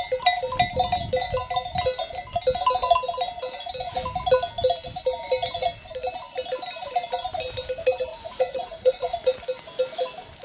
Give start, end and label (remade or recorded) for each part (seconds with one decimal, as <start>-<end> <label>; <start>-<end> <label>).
0.0-8.1 recorded; 8.1-9.1 remade; 9.1-10.4 recorded